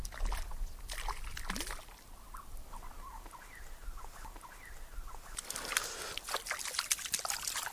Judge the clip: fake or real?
real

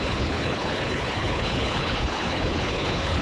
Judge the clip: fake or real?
fake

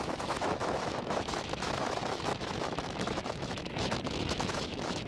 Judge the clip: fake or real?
fake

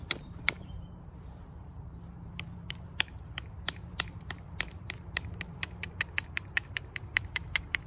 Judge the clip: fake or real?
fake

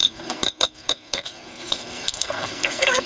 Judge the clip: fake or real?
fake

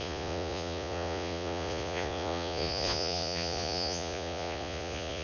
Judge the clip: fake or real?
fake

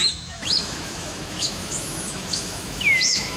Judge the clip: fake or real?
fake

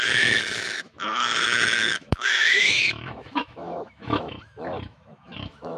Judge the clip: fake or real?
fake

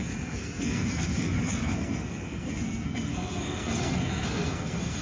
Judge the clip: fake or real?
fake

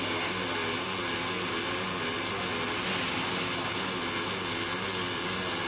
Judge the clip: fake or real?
real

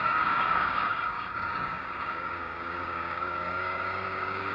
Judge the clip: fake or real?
fake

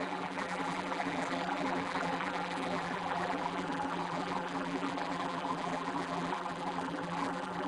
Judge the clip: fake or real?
fake